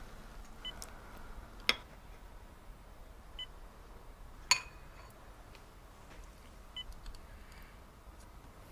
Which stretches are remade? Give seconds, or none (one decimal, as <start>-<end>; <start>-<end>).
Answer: none